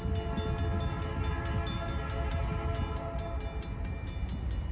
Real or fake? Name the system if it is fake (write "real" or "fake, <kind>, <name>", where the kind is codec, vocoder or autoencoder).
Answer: real